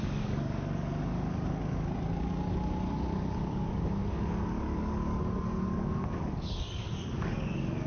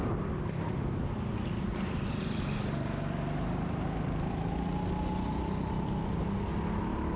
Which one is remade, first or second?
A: first